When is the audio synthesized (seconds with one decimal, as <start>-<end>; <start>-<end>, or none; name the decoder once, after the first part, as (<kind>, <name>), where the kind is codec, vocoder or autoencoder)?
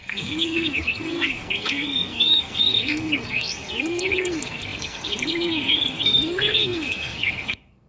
0.0-7.9 (codec, SNAC)